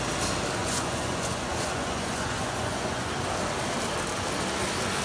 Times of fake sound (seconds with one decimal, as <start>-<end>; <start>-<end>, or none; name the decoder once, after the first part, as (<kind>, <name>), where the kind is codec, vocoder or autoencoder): 0.6-3.1 (vocoder, Vocos)